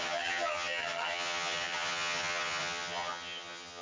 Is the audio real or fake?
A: fake